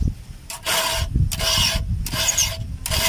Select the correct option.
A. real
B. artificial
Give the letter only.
A